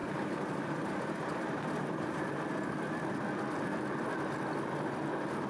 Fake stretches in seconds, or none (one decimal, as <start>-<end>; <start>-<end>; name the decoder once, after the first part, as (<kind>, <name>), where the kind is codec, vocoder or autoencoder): 0.0-2.3 (vocoder, BigVGAN v2)